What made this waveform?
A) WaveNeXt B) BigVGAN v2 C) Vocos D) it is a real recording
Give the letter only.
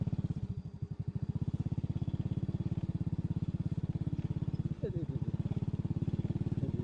D